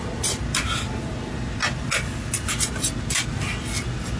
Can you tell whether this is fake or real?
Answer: real